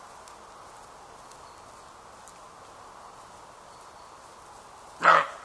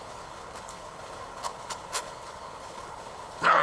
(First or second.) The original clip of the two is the first